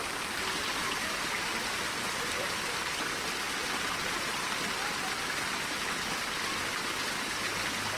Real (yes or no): yes